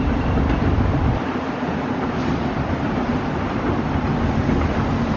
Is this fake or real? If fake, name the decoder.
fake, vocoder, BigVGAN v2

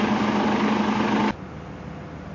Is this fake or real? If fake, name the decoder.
real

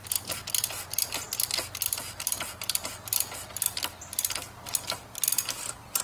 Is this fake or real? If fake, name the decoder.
real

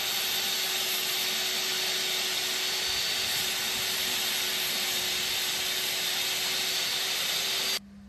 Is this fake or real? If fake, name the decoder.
real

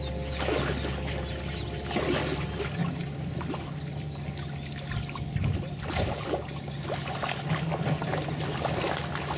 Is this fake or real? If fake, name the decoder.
real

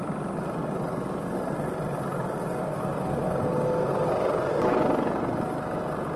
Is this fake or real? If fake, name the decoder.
real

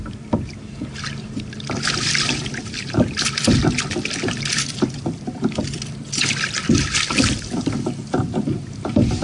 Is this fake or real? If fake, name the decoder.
fake, vocoder, BigVGAN v2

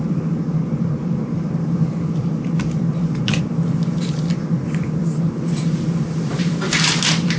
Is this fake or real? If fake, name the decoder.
fake, vocoder, BigVGAN v2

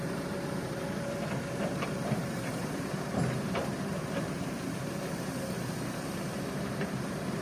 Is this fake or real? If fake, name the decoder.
fake, vocoder, BigVGAN v2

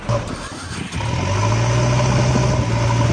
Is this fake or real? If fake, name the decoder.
real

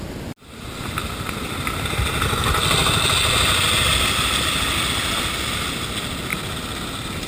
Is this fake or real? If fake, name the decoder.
real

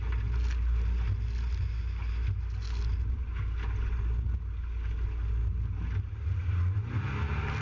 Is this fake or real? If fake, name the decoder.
real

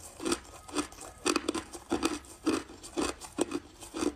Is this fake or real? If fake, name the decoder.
real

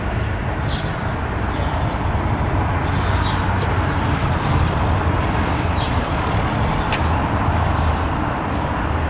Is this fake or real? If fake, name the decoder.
fake, vocoder, BigVGAN v2